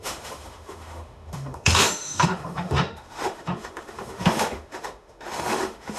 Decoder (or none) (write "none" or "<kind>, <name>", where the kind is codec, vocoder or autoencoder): autoencoder, DAC-VAE